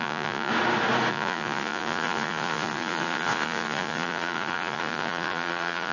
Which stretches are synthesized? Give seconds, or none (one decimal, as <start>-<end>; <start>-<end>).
0.0-0.5; 1.1-5.9